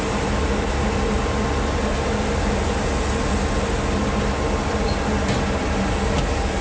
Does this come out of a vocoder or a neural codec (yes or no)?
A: no